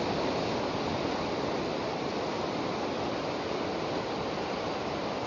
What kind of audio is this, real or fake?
real